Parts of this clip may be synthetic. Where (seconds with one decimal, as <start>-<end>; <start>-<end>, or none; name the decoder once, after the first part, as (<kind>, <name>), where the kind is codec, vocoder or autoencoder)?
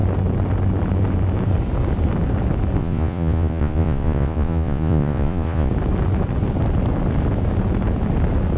2.8-5.7 (vocoder, Vocos)